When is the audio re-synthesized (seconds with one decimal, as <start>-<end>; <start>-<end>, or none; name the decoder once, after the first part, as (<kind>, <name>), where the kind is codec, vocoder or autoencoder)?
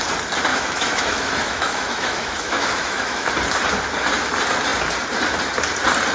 0.5-3.3 (autoencoder, DAC-VAE)